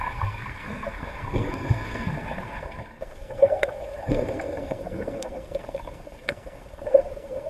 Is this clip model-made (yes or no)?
yes